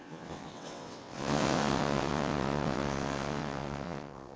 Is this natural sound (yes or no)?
no